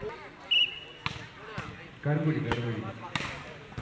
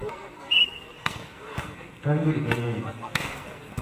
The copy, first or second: second